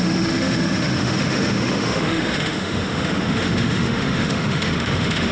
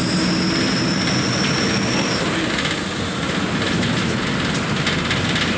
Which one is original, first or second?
second